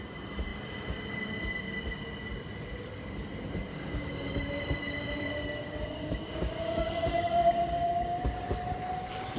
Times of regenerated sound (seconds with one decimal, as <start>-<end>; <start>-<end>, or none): 3.7-8.2